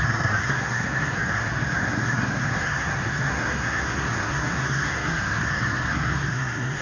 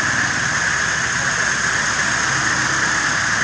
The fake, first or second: first